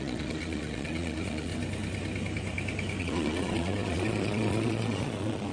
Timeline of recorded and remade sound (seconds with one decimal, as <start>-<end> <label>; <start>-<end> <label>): 0.0-1.5 remade; 1.5-3.0 recorded; 3.0-5.5 remade